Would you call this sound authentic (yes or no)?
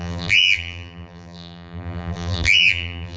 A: no